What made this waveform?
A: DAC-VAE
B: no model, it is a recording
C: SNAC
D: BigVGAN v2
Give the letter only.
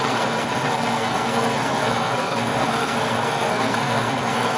C